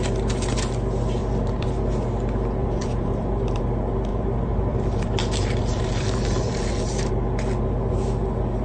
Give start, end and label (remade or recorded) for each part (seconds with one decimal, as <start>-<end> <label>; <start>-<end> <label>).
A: 0.0-1.2 recorded; 1.2-1.7 remade; 1.7-2.6 recorded; 2.6-3.6 remade; 3.6-4.1 recorded; 4.1-7.1 remade; 7.1-8.6 recorded